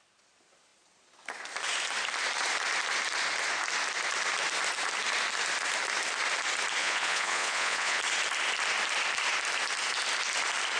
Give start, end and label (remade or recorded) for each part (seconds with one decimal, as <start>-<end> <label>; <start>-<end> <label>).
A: 0.0-6.8 recorded; 6.8-8.0 remade; 8.0-10.8 recorded